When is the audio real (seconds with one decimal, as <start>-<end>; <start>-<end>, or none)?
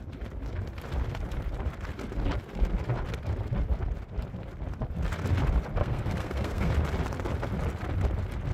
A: 0.0-5.8; 6.7-8.5